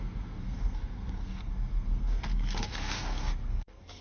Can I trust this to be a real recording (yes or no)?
no